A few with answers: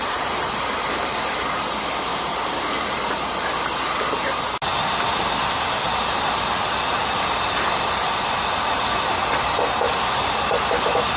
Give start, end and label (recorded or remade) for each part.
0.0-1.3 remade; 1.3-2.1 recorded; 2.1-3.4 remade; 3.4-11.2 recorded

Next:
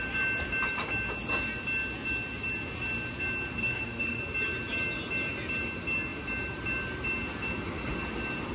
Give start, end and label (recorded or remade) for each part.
0.0-3.6 recorded; 3.6-4.2 remade; 4.2-8.5 recorded

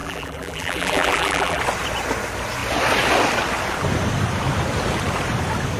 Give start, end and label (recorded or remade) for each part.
0.0-1.6 remade; 1.6-5.8 recorded

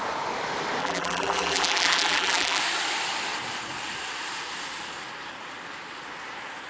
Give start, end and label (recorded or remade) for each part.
0.0-0.8 recorded; 0.8-2.6 remade; 2.6-6.7 recorded

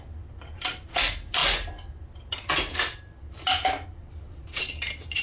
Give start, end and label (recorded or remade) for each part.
0.0-5.2 recorded